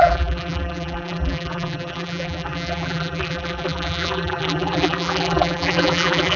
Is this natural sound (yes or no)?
no